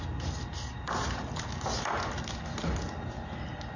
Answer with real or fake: real